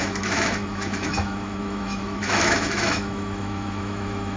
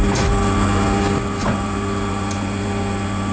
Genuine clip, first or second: second